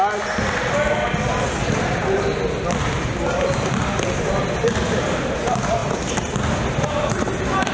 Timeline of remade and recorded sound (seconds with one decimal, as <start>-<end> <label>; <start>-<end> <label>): 0.0-7.7 recorded